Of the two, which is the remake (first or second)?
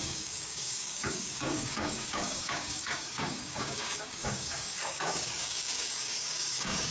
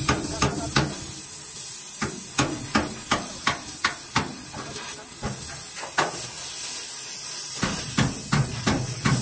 first